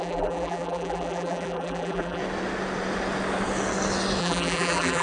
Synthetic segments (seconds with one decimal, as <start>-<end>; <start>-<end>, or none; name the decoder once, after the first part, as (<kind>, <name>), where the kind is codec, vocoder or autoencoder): 0.0-2.2 (vocoder, BigVGAN v2); 4.2-5.0